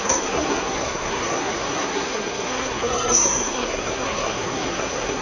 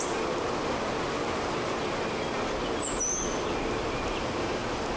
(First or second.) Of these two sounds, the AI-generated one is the first